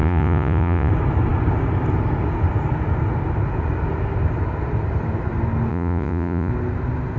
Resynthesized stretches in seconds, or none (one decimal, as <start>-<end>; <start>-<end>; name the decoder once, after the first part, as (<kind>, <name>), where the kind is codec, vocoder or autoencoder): 0.0-0.9 (vocoder, Vocos); 5.7-6.5